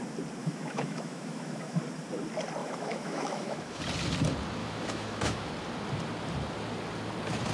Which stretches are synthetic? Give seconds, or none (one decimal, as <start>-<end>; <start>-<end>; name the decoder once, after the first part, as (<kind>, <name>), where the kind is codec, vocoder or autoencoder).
0.4-1.8 (autoencoder, DAC-VAE); 2.6-3.8; 4.6-5.5